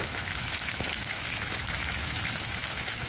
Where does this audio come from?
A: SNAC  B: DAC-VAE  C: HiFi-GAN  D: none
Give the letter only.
B